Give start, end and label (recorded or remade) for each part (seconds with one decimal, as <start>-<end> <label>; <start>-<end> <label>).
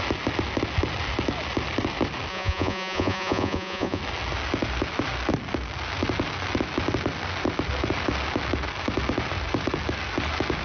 0.0-2.3 recorded; 2.3-4.0 remade; 4.0-10.6 recorded